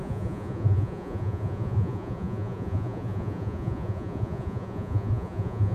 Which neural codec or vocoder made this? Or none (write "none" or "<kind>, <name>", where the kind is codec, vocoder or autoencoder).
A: vocoder, Vocos